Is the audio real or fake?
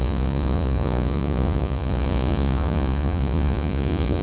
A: fake